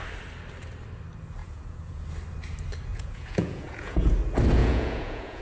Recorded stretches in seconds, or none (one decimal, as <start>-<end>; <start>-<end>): 0.0-1.4; 2.0-2.9; 4.1-4.6